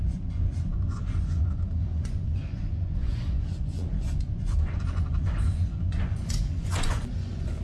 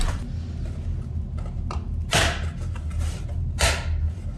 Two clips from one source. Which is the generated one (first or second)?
first